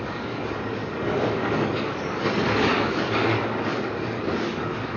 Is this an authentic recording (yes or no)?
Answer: no